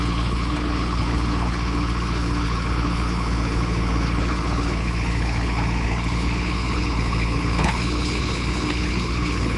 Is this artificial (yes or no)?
yes